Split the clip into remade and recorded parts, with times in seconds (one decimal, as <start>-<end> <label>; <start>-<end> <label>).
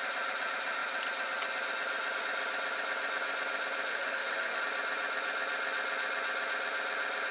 0.0-3.9 recorded; 3.9-4.6 remade; 4.6-7.3 recorded